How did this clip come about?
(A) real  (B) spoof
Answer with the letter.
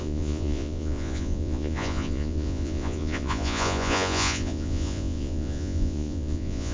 B